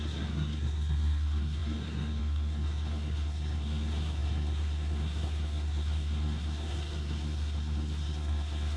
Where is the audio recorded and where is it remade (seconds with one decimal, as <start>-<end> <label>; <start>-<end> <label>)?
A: 0.0-8.8 remade